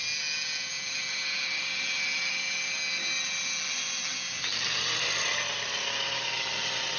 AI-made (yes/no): no